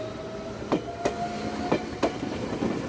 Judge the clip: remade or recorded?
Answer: recorded